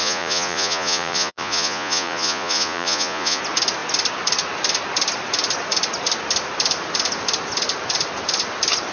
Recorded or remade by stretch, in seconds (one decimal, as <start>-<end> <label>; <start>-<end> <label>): 0.0-3.4 remade; 3.4-8.9 recorded